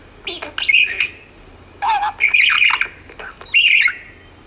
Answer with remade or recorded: recorded